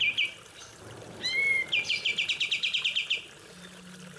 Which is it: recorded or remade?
recorded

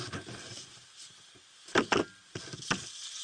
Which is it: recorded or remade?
recorded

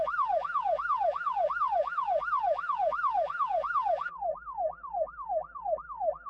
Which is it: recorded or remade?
remade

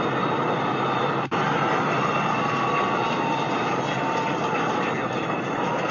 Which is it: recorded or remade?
recorded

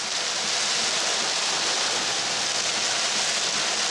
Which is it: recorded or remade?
recorded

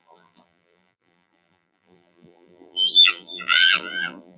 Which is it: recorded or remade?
remade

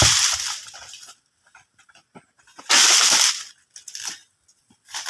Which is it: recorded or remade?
remade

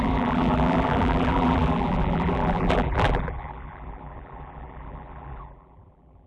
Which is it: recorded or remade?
remade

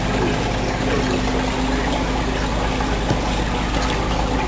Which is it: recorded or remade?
recorded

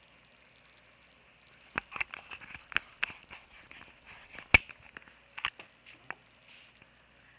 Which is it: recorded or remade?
recorded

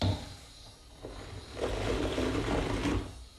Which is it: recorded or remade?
recorded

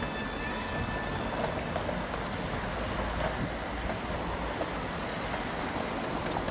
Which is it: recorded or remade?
recorded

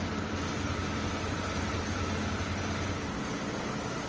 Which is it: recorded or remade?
remade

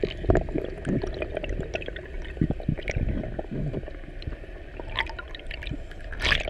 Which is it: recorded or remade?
recorded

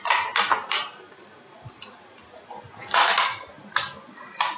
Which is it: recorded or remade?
recorded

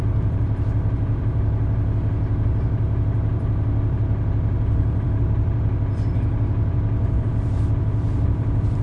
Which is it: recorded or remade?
remade